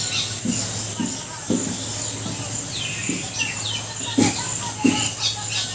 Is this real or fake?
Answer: real